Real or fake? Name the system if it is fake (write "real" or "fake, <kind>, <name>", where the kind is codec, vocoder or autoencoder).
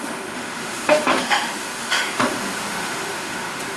fake, autoencoder, DAC-VAE